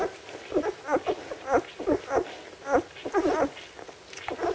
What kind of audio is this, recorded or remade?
recorded